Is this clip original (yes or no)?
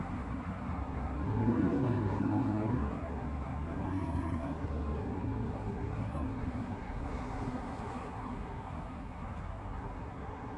no